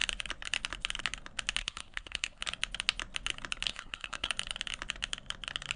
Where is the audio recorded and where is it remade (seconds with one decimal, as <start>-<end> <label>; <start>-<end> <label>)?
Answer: 0.0-1.6 recorded; 1.6-2.4 remade; 2.4-3.7 recorded; 3.7-4.3 remade; 4.3-5.8 recorded